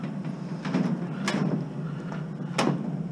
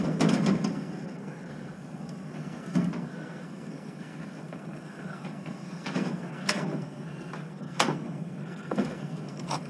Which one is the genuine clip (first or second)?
first